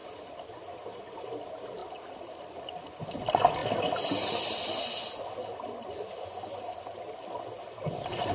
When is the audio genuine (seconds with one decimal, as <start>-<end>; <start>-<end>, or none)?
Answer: 0.0-8.3